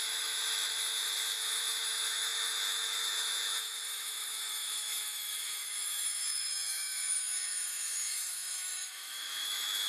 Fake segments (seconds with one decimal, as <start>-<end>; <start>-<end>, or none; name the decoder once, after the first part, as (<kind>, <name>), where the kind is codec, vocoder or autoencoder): 0.0-9.9 (autoencoder, DAC-VAE)